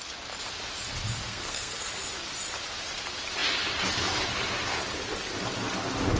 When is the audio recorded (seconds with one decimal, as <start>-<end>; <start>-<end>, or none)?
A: 0.0-1.2; 1.9-6.2